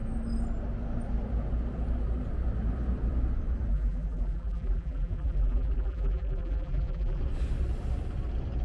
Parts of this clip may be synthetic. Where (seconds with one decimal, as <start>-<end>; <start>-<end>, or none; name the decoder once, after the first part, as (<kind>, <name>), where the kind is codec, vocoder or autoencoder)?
3.7-7.2 (vocoder, BigVGAN v2)